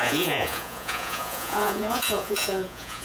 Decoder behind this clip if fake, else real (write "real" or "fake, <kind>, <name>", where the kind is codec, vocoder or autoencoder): fake, vocoder, Vocos